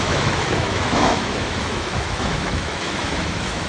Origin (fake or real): fake